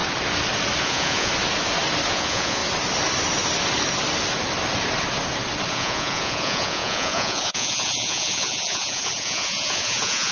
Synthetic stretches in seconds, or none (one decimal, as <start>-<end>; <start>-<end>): 0.8-1.3; 2.1-2.6; 5.7-10.3